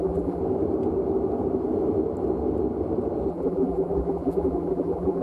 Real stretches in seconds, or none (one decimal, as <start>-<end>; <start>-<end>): 0.4-3.3